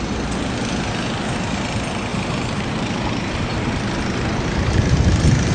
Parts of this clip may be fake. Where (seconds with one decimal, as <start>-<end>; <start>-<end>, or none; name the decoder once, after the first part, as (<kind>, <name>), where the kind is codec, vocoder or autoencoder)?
2.1-5.5 (vocoder, BigVGAN v2)

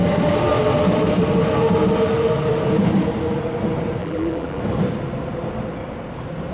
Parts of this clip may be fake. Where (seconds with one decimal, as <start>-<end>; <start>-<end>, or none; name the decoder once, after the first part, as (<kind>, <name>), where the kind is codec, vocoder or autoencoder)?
4.0-4.6 (vocoder, BigVGAN v2)

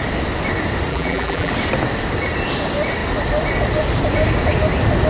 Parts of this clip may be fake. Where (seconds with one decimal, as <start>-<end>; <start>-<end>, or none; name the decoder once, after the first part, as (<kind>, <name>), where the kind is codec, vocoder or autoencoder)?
0.9-1.5 (vocoder, BigVGAN v2)